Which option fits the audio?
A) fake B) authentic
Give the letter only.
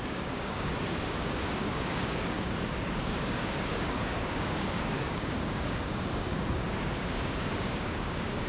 A